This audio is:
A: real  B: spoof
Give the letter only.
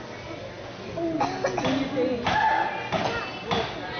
A